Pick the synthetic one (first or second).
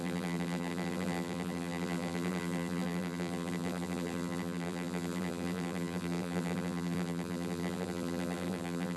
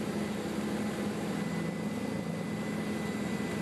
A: first